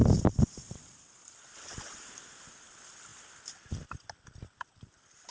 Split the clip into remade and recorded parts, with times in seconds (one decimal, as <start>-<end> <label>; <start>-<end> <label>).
0.0-5.3 recorded